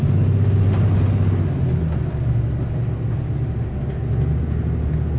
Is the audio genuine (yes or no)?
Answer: yes